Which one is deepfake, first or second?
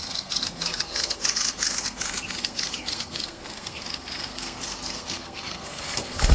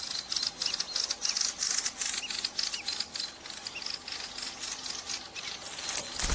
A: first